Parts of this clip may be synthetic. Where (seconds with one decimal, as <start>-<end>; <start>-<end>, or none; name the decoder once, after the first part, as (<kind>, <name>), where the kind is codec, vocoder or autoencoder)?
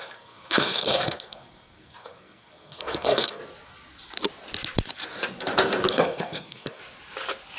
0.0-3.4 (codec, SNAC); 5.9-6.8